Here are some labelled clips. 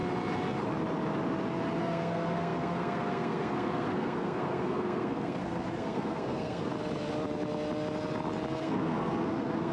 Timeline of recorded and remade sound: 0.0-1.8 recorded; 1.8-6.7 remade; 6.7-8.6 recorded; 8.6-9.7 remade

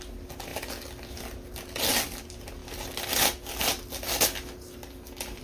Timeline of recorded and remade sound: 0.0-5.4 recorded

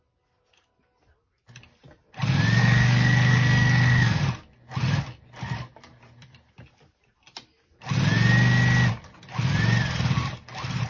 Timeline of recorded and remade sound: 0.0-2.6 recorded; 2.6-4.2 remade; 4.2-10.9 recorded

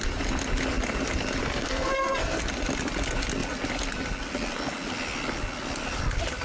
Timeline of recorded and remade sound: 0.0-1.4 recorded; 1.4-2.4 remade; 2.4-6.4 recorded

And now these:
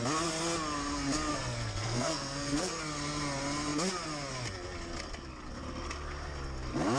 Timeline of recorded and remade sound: 0.0-1.3 recorded; 1.3-2.8 remade; 2.8-7.0 recorded

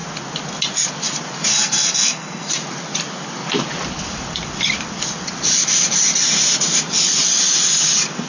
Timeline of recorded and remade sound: 0.0-1.5 recorded; 1.5-2.5 remade; 2.5-8.3 recorded

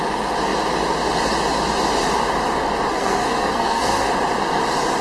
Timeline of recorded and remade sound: 0.0-2.9 recorded; 2.9-4.1 remade; 4.1-5.0 recorded